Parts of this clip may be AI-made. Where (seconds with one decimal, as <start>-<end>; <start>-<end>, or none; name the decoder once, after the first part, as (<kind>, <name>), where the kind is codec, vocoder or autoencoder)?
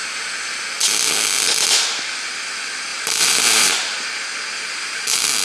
2.9-4.1 (vocoder, BigVGAN v2)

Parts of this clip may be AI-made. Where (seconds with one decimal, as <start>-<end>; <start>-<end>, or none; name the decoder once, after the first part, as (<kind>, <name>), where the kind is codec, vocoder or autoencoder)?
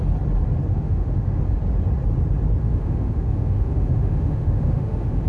0.7-1.4 (autoencoder, DAC-VAE); 2.6-5.3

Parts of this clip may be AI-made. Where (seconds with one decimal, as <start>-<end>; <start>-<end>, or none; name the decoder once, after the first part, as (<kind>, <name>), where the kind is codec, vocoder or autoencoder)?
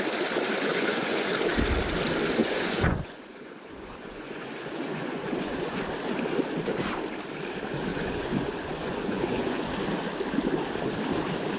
0.6-1.3 (vocoder, Vocos); 2.4-5.8; 7.9-9.7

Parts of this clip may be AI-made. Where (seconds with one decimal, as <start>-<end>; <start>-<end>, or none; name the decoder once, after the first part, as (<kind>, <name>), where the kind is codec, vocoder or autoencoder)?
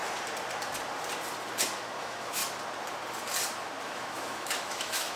2.0-2.4 (autoencoder, DAC-VAE); 3.8-5.2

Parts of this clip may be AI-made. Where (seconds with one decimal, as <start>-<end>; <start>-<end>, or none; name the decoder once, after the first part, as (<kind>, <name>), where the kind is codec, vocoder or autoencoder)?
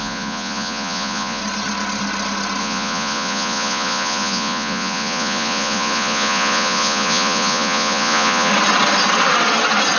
0.0-1.4 (vocoder, Vocos); 2.6-8.5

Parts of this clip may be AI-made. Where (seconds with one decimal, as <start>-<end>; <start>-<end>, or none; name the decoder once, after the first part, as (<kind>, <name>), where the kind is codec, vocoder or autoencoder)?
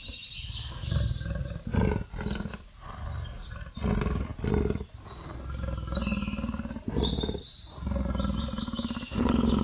none